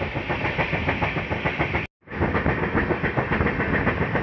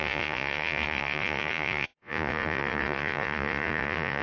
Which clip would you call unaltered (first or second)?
first